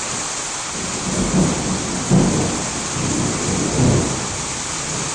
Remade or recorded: recorded